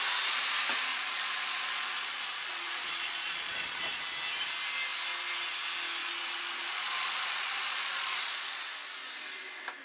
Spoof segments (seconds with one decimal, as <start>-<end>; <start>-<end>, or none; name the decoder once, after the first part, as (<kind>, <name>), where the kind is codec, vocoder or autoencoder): 0.9-4.0 (vocoder, Vocos); 6.0-8.6

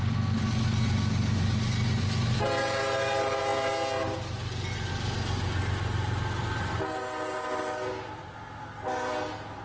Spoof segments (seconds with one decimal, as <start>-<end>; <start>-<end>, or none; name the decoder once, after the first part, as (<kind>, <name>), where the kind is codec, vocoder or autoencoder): none

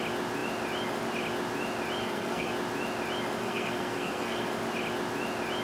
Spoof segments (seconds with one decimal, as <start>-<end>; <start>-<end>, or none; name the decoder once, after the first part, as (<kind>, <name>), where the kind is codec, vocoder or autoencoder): 2.0-2.5 (codec, SNAC); 3.4-4.5

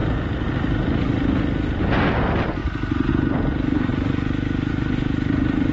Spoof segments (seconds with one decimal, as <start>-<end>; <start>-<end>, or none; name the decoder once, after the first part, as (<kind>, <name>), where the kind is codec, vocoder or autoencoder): 2.1-2.6 (vocoder, BigVGAN v2); 3.1-3.9; 4.7-5.7

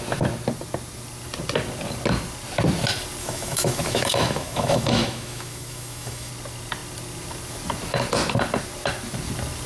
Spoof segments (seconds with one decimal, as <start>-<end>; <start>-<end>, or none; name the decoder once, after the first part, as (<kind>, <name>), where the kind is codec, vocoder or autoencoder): 3.2-6.3 (autoencoder, DAC-VAE)

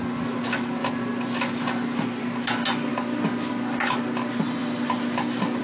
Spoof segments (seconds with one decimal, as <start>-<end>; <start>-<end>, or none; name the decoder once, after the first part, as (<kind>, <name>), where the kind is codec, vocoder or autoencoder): none